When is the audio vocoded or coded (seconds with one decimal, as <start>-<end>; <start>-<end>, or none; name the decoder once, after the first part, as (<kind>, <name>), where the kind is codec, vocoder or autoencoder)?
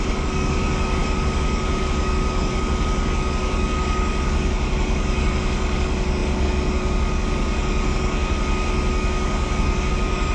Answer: 0.0-10.3 (codec, DAC)